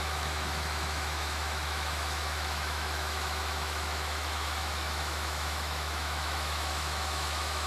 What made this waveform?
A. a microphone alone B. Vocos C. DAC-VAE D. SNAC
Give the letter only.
C